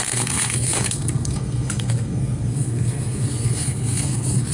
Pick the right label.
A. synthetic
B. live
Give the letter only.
A